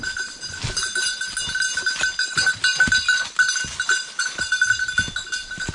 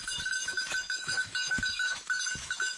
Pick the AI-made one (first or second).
second